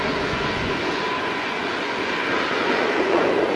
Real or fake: fake